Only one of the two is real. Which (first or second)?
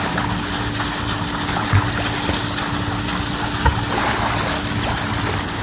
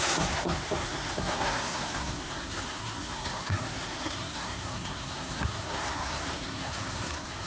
first